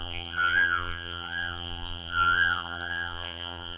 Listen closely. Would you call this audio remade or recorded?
remade